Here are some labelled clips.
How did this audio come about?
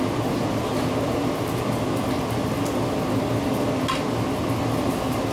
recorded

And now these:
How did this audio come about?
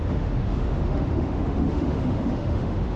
remade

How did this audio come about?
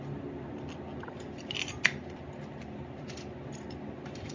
recorded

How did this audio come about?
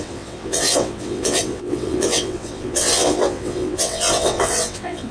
remade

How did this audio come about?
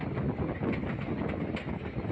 recorded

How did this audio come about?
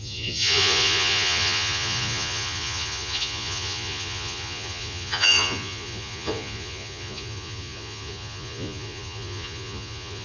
remade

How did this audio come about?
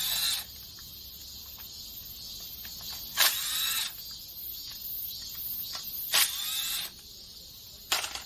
recorded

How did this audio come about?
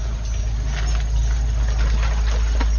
recorded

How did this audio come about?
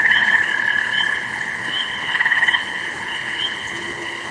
remade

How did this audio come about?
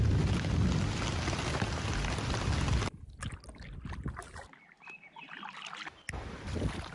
recorded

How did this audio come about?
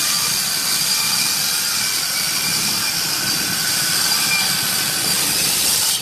recorded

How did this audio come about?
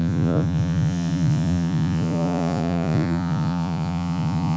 remade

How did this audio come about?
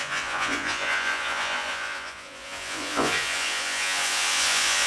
remade